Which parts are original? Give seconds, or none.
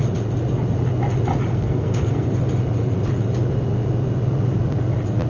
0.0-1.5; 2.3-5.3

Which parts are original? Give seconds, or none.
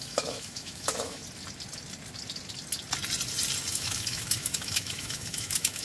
1.2-3.7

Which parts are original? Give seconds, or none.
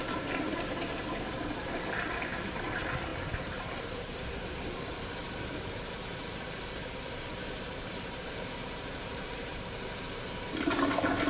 9.5-10.0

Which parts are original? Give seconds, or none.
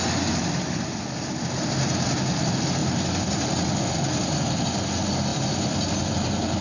0.0-2.8; 4.2-6.6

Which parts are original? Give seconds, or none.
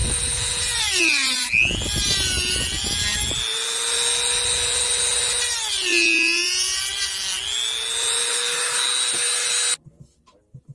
0.8-10.7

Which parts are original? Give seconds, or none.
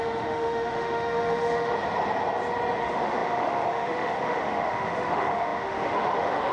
1.7-2.8